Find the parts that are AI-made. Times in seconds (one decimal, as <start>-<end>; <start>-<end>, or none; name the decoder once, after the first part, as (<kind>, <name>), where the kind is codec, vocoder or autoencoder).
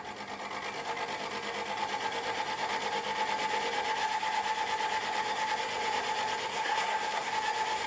6.5-7.3 (codec, SNAC)